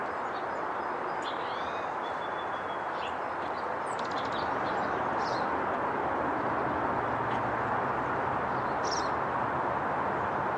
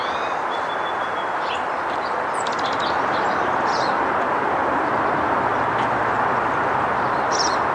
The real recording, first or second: first